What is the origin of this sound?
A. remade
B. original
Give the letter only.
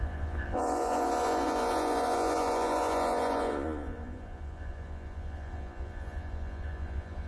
A